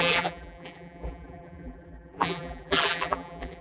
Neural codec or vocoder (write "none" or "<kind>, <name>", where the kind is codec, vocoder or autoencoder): vocoder, BigVGAN v2